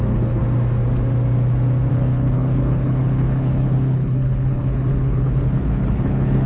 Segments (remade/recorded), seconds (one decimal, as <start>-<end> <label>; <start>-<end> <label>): 0.0-0.4 remade; 0.4-1.9 recorded; 1.9-6.5 remade